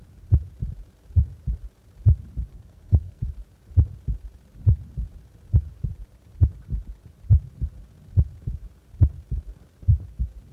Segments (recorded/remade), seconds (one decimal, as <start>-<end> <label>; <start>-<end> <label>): 0.0-2.5 recorded; 2.5-3.2 remade; 3.2-10.5 recorded